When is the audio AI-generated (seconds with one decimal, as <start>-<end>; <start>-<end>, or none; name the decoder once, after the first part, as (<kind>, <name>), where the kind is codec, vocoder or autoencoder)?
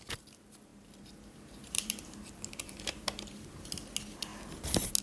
0.7-3.7 (vocoder, BigVGAN v2)